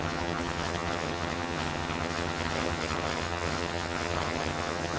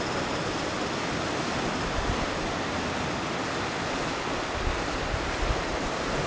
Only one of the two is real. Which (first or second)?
second